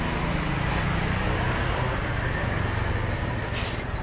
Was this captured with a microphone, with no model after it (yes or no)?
yes